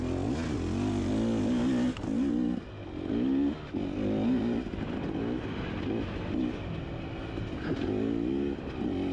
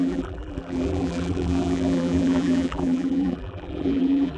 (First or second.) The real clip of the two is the first